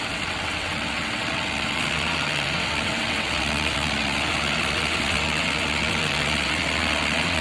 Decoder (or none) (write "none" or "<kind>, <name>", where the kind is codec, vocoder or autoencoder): vocoder, WaveNeXt